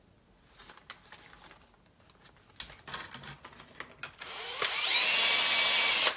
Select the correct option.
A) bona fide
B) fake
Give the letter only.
A